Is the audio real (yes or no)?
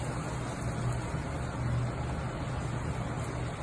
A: yes